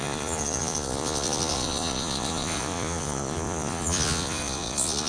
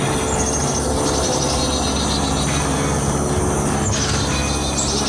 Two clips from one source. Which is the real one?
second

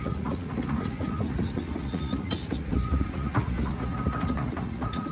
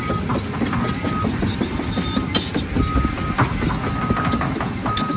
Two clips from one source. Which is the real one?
second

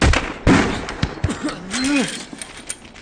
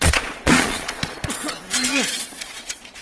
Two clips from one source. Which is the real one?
first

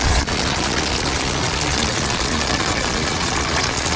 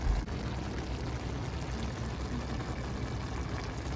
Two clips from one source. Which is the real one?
second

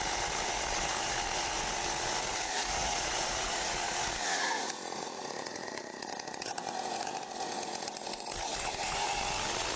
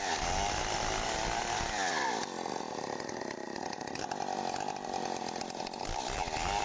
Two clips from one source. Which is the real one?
second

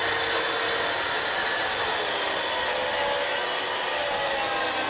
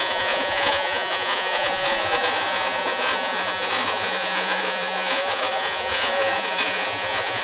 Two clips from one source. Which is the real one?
first